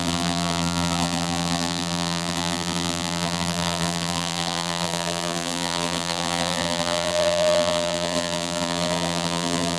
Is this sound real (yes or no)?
no